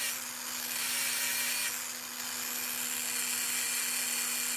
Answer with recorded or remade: recorded